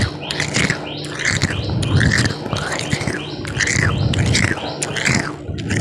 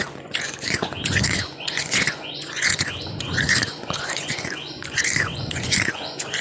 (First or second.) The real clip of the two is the first